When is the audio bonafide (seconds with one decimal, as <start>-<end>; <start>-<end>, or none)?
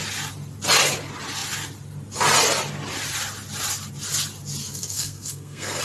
0.0-4.6